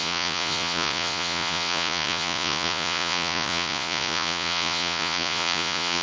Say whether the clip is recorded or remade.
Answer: remade